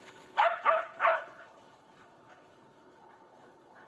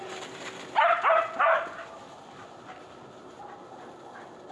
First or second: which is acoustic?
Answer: second